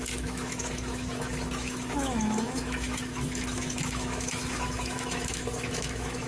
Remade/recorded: remade